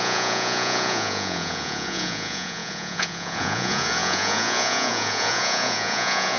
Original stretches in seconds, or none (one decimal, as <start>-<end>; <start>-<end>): none